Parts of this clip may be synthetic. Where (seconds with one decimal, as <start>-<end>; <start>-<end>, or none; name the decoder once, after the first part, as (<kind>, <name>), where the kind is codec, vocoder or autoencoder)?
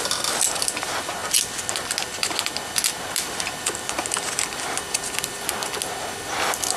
none